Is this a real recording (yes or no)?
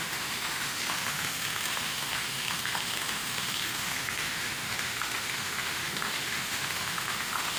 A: no